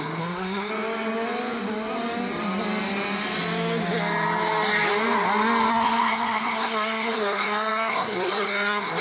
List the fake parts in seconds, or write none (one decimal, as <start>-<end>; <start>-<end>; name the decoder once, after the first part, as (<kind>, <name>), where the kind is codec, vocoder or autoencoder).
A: 0.0-0.7 (codec, SNAC); 5.7-9.0